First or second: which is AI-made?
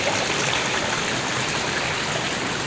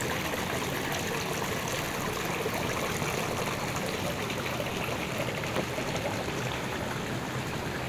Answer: first